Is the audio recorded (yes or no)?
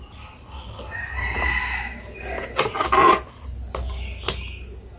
yes